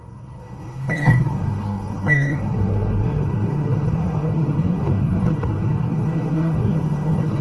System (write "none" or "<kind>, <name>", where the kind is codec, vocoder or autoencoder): codec, SNAC